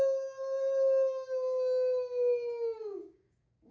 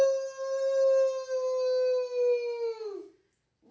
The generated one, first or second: first